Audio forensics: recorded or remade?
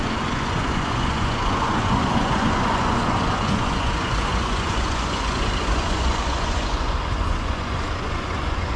remade